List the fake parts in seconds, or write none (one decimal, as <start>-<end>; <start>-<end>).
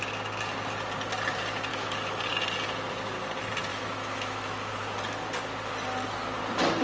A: 1.7-2.2; 3.7-4.7